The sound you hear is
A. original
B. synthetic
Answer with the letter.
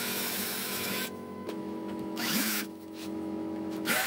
B